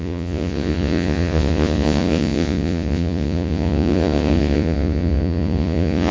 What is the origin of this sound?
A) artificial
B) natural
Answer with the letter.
A